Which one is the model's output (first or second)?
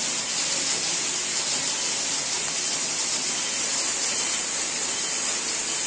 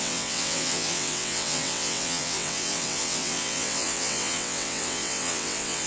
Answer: second